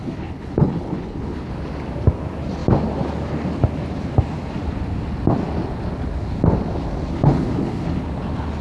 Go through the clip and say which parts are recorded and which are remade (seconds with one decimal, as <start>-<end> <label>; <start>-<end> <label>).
0.0-1.5 remade; 1.5-7.1 recorded; 7.1-8.0 remade; 8.0-8.6 recorded